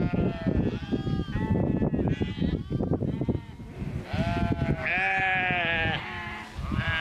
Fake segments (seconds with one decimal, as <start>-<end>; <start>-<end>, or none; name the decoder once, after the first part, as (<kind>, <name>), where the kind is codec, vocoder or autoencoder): none